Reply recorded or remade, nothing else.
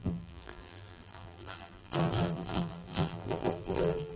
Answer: remade